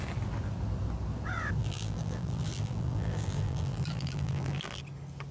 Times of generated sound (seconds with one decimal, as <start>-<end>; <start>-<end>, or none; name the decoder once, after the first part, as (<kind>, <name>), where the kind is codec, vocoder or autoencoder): 1.6-4.8 (vocoder, BigVGAN v2)